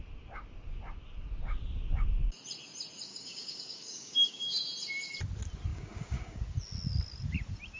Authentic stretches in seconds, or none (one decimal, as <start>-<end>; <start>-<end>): 0.0-3.1; 4.6-5.7; 6.4-7.8